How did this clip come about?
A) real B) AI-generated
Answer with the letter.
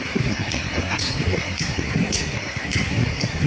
B